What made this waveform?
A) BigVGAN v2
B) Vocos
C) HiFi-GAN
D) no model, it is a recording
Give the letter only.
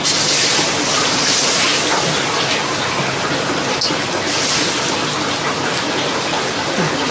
D